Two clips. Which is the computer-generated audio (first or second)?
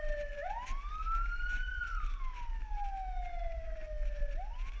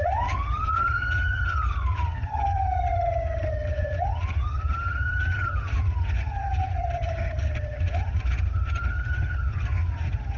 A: second